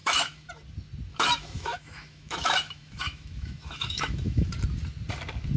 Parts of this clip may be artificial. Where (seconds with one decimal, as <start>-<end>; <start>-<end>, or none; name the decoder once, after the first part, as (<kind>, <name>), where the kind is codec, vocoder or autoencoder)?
0.0-0.5 (autoencoder, DAC-VAE); 1.1-4.5